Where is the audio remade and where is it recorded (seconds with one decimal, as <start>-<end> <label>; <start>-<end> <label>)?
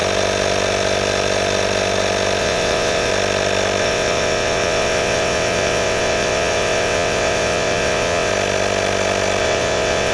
0.0-2.4 recorded; 2.4-3.1 remade; 3.1-3.8 recorded; 3.8-8.3 remade; 8.3-9.4 recorded; 9.4-10.1 remade